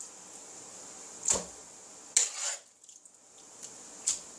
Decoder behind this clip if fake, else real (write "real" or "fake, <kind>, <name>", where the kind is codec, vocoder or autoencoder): real